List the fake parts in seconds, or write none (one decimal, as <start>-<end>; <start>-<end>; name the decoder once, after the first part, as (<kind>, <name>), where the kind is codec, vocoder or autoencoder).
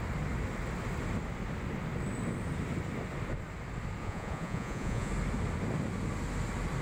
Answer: 4.0-5.1 (vocoder, Vocos)